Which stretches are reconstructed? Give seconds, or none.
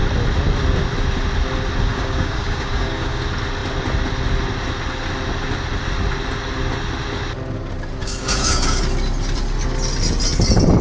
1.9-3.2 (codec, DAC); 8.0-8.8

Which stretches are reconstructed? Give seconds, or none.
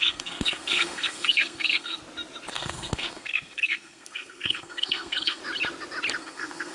0.0-2.0 (codec, SNAC); 2.5-5.4; 6.2-6.7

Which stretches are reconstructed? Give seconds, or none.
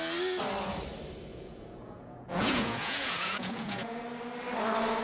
1.3-4.0 (vocoder, Vocos)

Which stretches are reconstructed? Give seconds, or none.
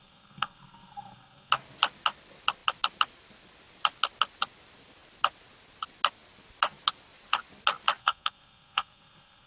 0.0-1.5 (codec, SNAC); 8.0-9.5